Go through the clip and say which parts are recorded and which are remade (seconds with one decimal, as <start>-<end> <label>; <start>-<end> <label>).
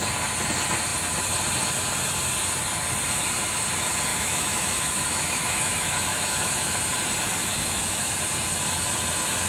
0.0-4.1 recorded; 4.1-6.8 remade; 6.8-7.5 recorded; 7.5-8.1 remade; 8.1-9.5 recorded